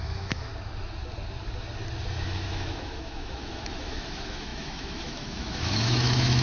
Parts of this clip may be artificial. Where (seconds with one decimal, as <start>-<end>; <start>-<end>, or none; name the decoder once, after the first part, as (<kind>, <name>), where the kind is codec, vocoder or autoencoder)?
0.0-0.5 (autoencoder, DAC-VAE); 2.2-6.4